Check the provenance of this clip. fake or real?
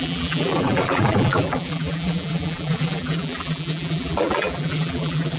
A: fake